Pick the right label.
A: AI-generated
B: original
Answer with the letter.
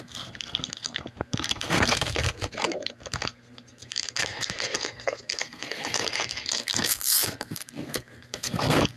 A